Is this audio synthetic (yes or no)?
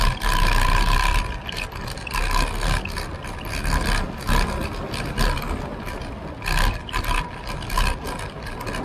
no